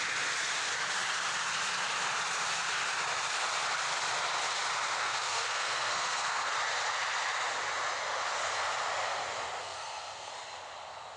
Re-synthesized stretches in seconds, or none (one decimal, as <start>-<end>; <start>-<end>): 5.0-6.5; 9.6-10.3